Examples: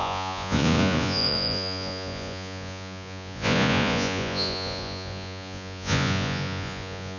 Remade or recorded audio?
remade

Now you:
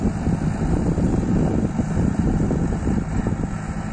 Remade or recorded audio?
recorded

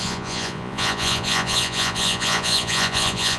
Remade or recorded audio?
remade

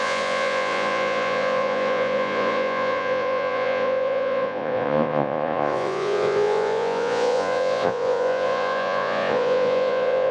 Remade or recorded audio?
remade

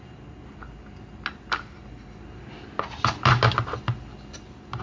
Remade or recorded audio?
recorded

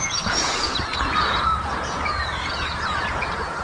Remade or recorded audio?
remade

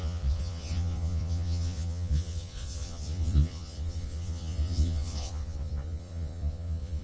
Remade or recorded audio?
remade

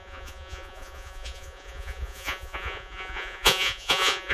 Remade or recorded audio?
remade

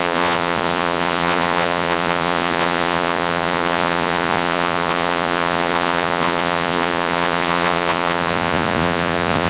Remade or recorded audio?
remade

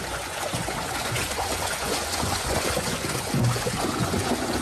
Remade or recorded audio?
remade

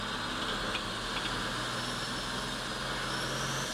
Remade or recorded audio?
recorded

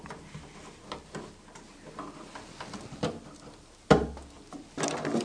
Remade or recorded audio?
recorded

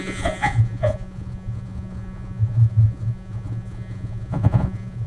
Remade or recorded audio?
remade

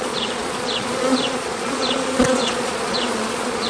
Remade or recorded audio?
remade